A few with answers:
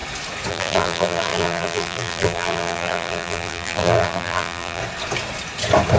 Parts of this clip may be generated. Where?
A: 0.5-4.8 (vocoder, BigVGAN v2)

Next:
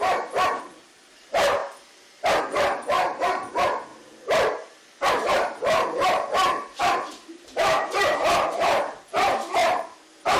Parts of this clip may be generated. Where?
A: 0.0-1.6 (vocoder, BigVGAN v2); 2.4-3.9; 5.1-10.4